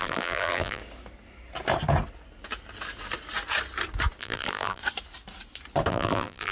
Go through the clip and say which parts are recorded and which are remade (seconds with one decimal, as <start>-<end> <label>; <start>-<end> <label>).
0.0-0.8 remade; 0.8-4.2 recorded; 4.2-4.8 remade; 4.8-5.9 recorded; 5.9-6.5 remade